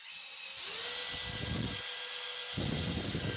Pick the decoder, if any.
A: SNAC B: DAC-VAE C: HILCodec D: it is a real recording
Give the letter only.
D